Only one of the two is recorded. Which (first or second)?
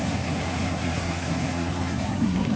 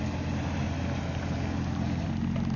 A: second